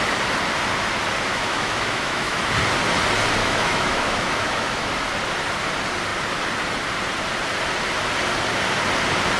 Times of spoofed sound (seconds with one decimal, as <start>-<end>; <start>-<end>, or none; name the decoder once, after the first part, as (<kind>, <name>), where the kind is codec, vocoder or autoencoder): 1.3-2.4 (autoencoder, DAC-VAE); 3.4-4.9